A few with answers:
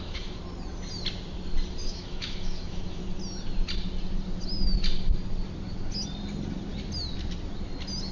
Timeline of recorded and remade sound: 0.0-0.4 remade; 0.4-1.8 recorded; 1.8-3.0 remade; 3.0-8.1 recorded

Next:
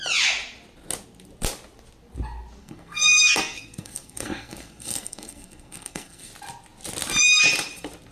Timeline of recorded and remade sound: 0.0-2.6 recorded; 2.6-6.3 remade; 6.3-8.1 recorded

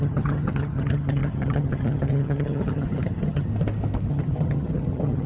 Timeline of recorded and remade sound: 0.0-3.5 remade; 3.5-4.1 recorded; 4.1-5.3 remade

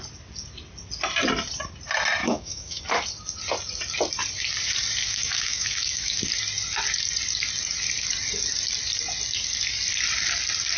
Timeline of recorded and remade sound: 0.0-2.2 recorded; 2.2-2.8 remade; 2.8-5.0 recorded; 5.0-6.2 remade; 6.2-10.8 recorded